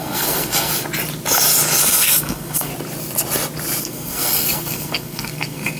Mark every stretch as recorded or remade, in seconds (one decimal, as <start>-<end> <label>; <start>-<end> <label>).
0.0-0.7 remade; 0.7-1.8 recorded; 1.8-2.7 remade; 2.7-3.8 recorded; 3.8-5.8 remade